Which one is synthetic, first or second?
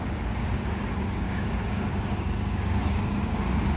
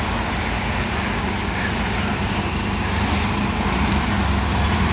first